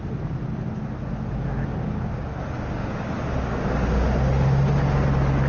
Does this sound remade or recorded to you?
recorded